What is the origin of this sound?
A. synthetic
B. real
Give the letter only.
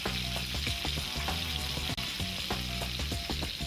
B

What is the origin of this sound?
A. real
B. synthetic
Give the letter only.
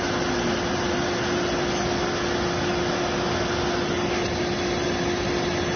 A